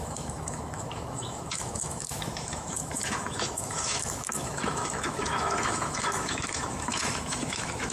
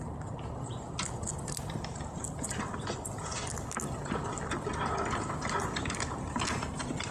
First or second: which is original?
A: second